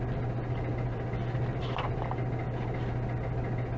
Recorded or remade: recorded